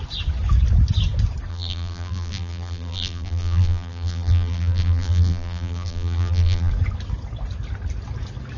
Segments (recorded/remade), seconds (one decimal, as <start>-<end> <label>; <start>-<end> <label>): 0.0-1.5 recorded; 1.5-6.7 remade; 6.7-8.6 recorded